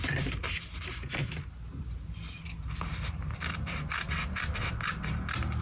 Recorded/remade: recorded